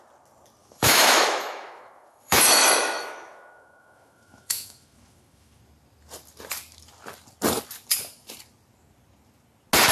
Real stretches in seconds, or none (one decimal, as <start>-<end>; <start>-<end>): 0.0-0.6; 5.6-9.9